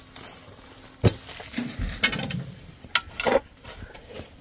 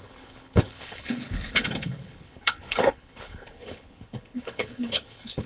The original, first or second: first